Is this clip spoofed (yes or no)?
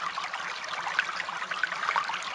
no